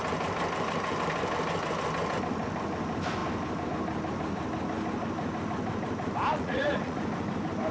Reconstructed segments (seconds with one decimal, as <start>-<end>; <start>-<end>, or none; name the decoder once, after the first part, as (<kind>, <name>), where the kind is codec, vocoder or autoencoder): 6.3-7.0 (vocoder, Vocos)